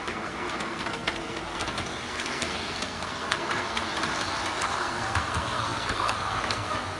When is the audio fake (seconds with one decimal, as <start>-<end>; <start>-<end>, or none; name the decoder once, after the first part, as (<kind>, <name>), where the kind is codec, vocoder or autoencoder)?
0.0-3.9 (codec, SNAC); 4.6-7.0